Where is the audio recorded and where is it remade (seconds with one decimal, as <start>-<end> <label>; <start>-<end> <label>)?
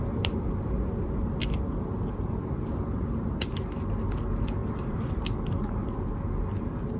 0.0-0.7 remade; 0.7-4.6 recorded; 4.6-6.1 remade; 6.1-7.0 recorded